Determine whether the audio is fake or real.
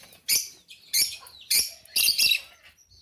real